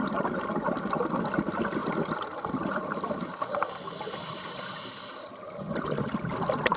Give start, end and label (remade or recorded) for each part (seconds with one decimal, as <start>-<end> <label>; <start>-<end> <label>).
0.0-6.8 recorded